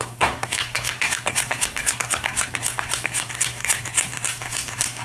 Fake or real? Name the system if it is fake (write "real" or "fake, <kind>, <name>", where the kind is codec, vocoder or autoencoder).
fake, codec, SNAC